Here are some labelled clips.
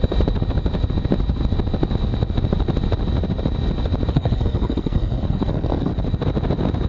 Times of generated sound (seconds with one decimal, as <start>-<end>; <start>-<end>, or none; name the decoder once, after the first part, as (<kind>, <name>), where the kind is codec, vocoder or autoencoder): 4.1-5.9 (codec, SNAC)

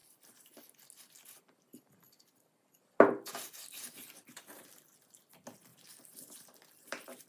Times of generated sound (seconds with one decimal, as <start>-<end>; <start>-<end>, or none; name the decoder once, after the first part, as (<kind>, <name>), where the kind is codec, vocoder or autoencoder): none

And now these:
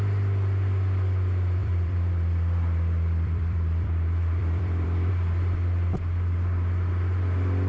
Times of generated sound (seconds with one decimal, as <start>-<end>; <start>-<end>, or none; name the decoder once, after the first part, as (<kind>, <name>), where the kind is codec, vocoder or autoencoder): 1.6-5.1 (vocoder, BigVGAN v2)

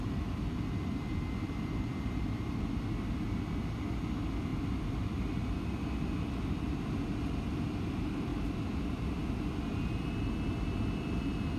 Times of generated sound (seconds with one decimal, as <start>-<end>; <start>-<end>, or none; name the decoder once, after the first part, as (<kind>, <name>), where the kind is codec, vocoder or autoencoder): none

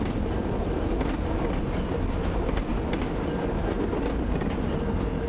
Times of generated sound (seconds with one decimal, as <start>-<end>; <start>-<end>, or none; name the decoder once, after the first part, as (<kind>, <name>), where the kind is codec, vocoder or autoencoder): none

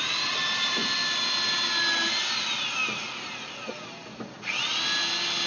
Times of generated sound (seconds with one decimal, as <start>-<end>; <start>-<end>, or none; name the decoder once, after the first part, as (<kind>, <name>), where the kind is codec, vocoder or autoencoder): none